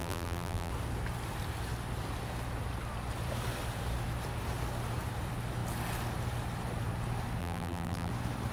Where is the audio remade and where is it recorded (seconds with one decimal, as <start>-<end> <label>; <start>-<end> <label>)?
0.0-0.7 remade; 0.7-7.4 recorded; 7.4-8.1 remade; 8.1-8.5 recorded